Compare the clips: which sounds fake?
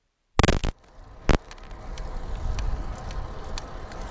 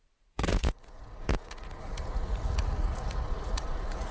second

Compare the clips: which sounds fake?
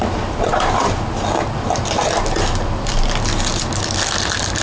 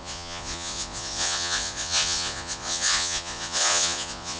second